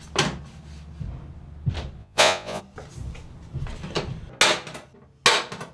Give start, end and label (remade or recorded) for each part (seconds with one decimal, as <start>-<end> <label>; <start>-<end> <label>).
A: 0.0-2.0 recorded; 2.0-2.6 remade; 2.6-5.7 recorded